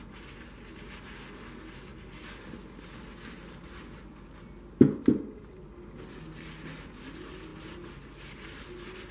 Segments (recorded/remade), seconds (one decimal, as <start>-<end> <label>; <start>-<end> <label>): 0.0-9.1 recorded

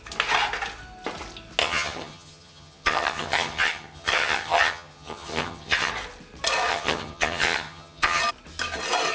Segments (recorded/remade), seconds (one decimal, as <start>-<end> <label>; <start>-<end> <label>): 0.0-1.6 recorded; 1.6-5.9 remade; 5.9-6.7 recorded; 6.7-8.2 remade; 8.2-9.1 recorded

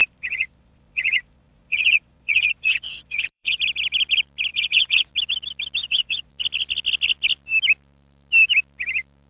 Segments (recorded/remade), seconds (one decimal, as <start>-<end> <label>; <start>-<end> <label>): 0.0-3.6 remade; 3.6-4.5 recorded; 4.5-5.1 remade; 5.1-5.8 recorded; 5.8-6.3 remade; 6.3-9.3 recorded

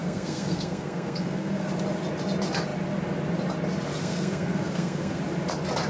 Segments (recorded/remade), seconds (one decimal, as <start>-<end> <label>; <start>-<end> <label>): 0.0-1.7 remade; 1.7-4.0 recorded; 4.0-5.2 remade; 5.2-5.9 recorded

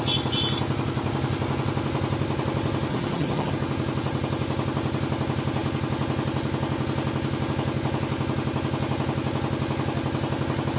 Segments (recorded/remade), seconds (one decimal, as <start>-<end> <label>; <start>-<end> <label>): 0.0-2.9 recorded; 2.9-3.5 remade; 3.5-10.8 recorded

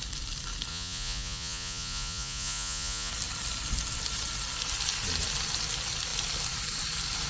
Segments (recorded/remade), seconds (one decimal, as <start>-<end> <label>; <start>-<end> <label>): 0.0-0.7 recorded; 0.7-3.1 remade; 3.1-7.3 recorded

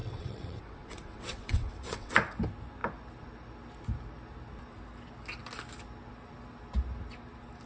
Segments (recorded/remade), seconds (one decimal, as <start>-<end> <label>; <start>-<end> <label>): 0.0-2.1 remade; 2.1-7.7 recorded

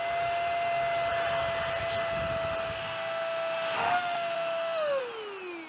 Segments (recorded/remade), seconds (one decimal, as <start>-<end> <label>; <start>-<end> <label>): 0.0-2.8 recorded; 2.8-5.0 remade; 5.0-5.7 recorded